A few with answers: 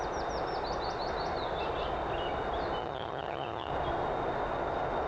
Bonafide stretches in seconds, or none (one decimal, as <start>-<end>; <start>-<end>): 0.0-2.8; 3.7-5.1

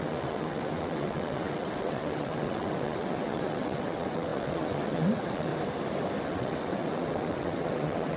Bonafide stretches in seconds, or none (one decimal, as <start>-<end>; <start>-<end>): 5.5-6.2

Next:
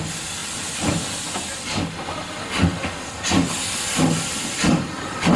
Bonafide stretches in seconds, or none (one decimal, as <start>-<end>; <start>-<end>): 0.0-5.4

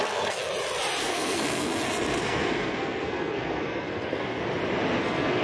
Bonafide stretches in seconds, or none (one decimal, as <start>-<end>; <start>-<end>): 0.4-1.0; 1.7-2.2; 4.4-5.0

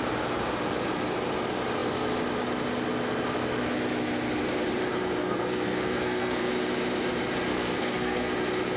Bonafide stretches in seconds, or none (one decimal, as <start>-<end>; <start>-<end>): 0.0-5.2; 6.5-7.5; 8.3-8.8